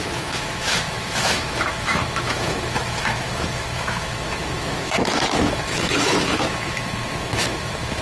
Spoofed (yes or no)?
yes